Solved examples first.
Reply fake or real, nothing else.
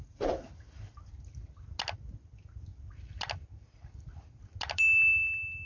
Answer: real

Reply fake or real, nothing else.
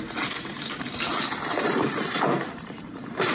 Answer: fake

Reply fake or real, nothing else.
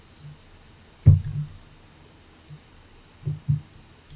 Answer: real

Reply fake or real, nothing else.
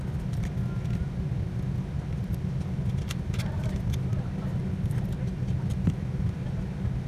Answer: real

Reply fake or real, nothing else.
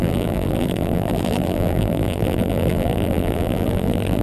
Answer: fake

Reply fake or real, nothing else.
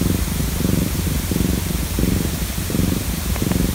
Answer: fake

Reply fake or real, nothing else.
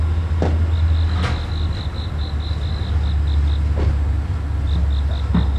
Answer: real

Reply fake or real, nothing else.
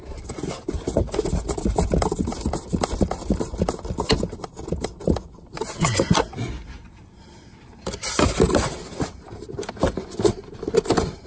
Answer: real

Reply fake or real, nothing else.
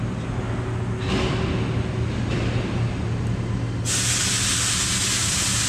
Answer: real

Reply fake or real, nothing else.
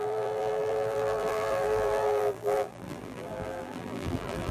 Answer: fake